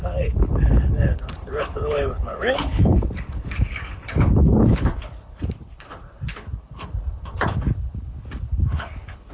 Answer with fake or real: fake